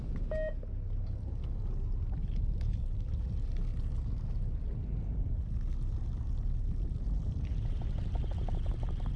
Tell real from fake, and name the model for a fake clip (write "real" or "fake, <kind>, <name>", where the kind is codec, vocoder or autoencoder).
real